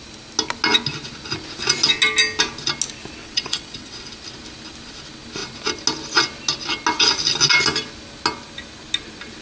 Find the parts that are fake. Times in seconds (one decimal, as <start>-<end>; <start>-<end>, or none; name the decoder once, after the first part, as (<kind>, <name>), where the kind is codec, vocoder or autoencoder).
3.2-4.1 (vocoder, WaveNeXt)